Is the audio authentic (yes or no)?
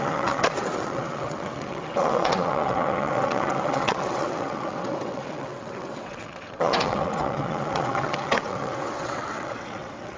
no